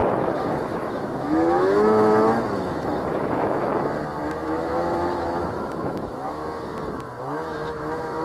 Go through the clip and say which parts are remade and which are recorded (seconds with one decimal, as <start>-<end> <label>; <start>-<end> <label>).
0.0-3.7 remade; 3.7-4.3 recorded; 4.3-6.4 remade; 6.4-7.2 recorded; 7.2-8.2 remade

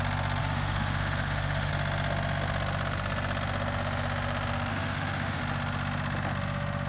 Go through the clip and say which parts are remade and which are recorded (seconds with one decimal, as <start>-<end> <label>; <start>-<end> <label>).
0.0-0.4 recorded; 0.4-1.7 remade; 1.7-4.7 recorded; 4.7-5.4 remade; 5.4-6.9 recorded

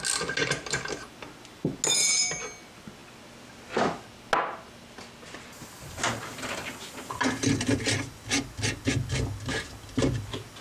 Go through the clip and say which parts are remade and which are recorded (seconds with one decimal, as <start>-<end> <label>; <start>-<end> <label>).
0.0-10.6 recorded

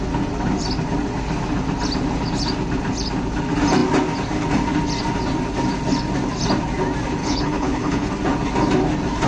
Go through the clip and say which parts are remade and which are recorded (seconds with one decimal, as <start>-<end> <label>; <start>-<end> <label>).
0.0-7.2 recorded; 7.2-8.1 remade; 8.1-9.3 recorded

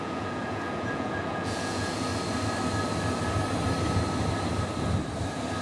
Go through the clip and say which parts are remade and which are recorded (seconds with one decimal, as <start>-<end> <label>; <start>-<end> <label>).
0.0-2.1 remade; 2.1-5.6 recorded

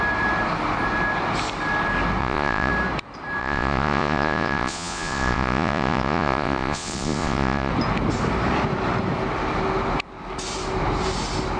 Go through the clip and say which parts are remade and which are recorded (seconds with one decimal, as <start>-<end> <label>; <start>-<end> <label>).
0.0-2.2 recorded; 2.2-2.7 remade; 2.7-3.4 recorded; 3.4-7.7 remade; 7.7-11.6 recorded

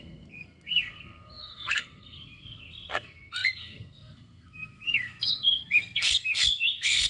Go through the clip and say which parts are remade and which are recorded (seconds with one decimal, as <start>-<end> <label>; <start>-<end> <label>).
0.0-7.1 remade

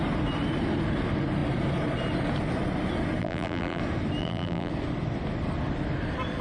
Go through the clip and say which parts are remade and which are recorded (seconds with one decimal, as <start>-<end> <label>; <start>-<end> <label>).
0.0-3.2 recorded; 3.2-3.8 remade; 3.8-4.2 recorded; 4.2-4.7 remade; 4.7-6.4 recorded